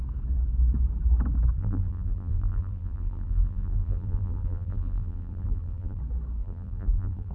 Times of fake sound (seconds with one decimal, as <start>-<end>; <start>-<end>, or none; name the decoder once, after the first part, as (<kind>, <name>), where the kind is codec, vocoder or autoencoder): 1.6-6.0 (vocoder, BigVGAN v2); 6.4-7.3